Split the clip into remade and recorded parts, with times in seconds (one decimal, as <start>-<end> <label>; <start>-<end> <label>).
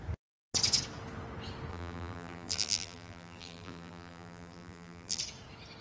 0.0-1.7 recorded; 1.7-5.2 remade; 5.2-5.8 recorded